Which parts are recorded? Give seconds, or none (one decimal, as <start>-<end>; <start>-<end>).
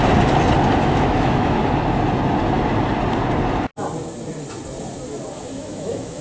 0.0-0.8; 1.6-5.3